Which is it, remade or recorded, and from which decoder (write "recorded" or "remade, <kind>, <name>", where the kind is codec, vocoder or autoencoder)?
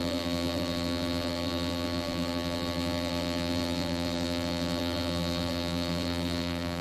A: remade, vocoder, BigVGAN v2